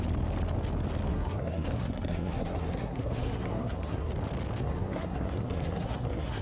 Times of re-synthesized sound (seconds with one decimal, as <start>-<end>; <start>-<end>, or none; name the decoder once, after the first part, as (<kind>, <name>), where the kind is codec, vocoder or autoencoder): 1.1-4.1 (codec, SNAC); 4.6-6.4